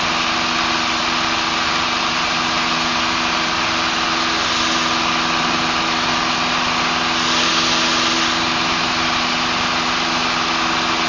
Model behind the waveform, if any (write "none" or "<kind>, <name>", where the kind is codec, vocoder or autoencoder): none